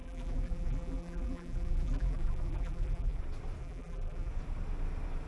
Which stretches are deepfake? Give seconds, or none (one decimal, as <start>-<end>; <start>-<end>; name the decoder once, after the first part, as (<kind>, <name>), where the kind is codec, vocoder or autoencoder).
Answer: 0.0-3.2 (vocoder, BigVGAN v2); 3.6-4.3